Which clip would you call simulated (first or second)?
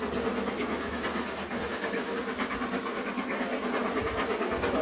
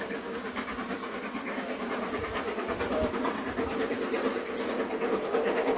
second